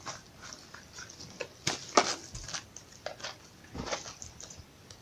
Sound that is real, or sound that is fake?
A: real